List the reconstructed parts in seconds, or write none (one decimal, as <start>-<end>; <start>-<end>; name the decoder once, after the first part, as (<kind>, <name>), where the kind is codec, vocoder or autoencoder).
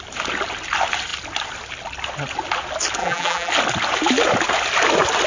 3.0-3.5 (vocoder, BigVGAN v2)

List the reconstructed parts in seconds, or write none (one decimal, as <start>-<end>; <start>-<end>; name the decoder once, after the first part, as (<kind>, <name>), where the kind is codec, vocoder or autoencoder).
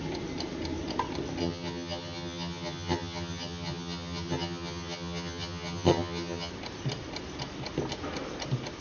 1.4-6.5 (vocoder, HiFi-GAN)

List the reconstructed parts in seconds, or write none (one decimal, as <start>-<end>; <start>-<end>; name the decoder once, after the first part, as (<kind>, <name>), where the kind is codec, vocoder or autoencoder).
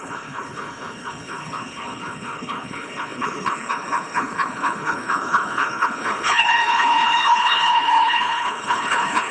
0.0-9.3 (codec, HILCodec)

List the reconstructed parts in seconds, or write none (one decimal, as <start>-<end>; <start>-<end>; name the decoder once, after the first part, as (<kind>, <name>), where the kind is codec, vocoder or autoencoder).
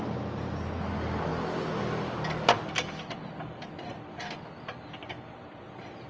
none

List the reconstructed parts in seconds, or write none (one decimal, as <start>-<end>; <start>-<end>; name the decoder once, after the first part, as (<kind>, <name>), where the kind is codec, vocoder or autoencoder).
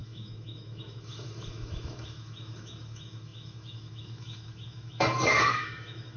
0.0-6.2 (autoencoder, DAC-VAE)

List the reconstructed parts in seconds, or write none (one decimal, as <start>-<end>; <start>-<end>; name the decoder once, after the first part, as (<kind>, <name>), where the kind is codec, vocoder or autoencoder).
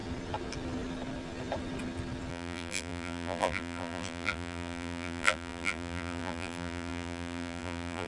2.3-8.1 (vocoder, BigVGAN v2)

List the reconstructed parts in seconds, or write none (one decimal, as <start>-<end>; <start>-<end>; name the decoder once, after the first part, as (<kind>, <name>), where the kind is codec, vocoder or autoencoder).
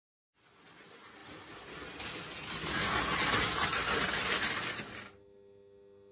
none